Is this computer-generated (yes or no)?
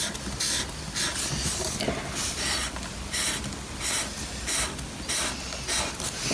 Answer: no